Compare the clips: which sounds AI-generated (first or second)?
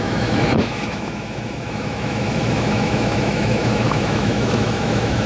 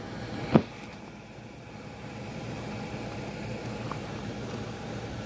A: first